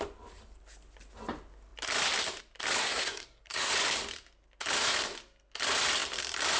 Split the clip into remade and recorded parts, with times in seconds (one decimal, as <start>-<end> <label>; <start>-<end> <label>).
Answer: 0.0-2.8 recorded; 2.8-3.7 remade; 3.7-6.6 recorded